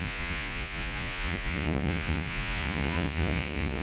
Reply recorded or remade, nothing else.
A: remade